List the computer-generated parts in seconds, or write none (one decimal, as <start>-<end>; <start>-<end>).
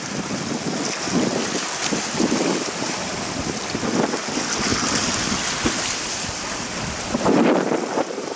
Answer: 0.0-1.8; 2.4-4.7; 5.7-8.4